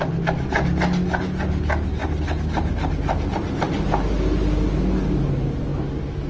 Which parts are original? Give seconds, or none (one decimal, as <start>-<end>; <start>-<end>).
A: 0.0-6.3